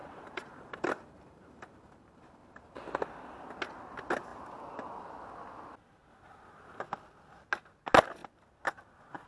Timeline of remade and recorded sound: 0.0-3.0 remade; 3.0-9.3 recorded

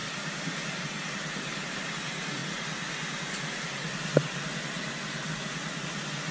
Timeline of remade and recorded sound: 0.0-6.3 recorded

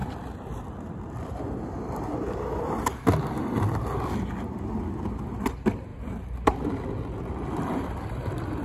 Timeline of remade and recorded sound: 0.0-1.6 remade; 1.6-5.9 recorded; 5.9-6.5 remade; 6.5-8.6 recorded

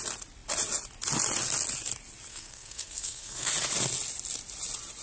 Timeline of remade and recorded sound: 0.0-2.3 recorded; 2.3-3.5 remade; 3.5-5.0 recorded

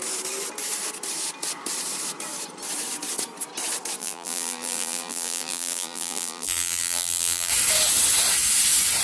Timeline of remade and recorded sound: 0.0-4.0 recorded; 4.0-7.5 remade; 7.5-9.0 recorded